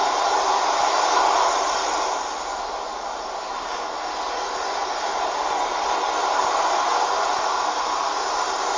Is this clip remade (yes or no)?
no